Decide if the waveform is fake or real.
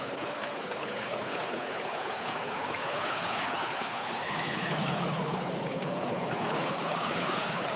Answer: fake